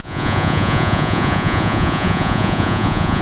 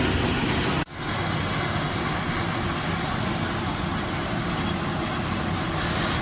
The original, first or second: second